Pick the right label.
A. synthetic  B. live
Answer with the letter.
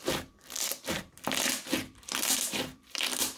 A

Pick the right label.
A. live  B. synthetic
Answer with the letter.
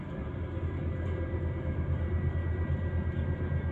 A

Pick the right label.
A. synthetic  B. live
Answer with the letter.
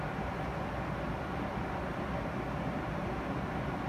B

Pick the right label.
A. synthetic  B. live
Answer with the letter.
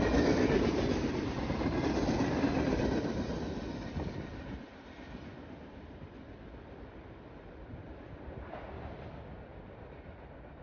A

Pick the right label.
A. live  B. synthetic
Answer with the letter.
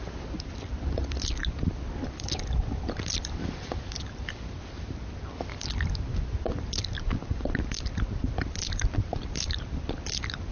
B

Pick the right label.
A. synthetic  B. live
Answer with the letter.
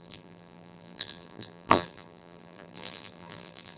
A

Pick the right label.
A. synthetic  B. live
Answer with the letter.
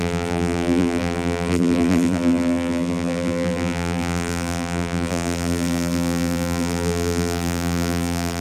A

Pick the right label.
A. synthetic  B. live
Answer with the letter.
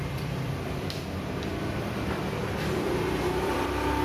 A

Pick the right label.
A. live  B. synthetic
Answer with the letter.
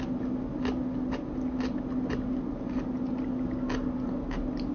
A